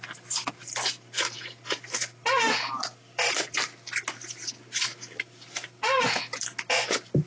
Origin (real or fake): real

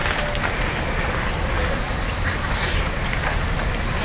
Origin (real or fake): real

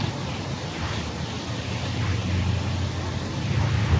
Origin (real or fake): real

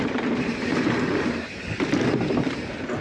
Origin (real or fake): fake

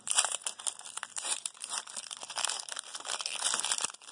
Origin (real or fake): fake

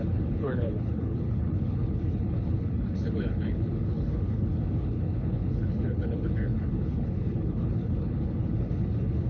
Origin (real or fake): fake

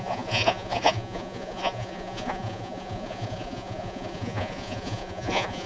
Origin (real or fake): fake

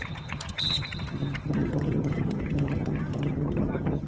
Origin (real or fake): fake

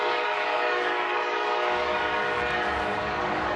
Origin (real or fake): fake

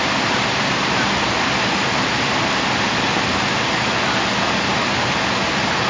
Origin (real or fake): real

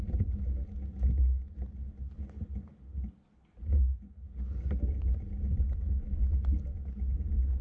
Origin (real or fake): real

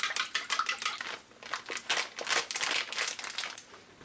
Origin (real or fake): real